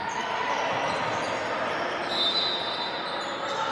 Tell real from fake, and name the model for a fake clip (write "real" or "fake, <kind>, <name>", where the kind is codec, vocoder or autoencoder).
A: real